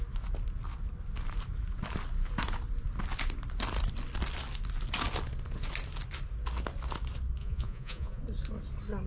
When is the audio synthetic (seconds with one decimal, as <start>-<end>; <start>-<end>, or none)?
7.4-8.2